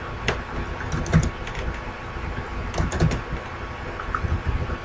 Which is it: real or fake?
real